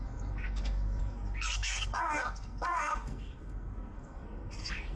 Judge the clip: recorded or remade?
remade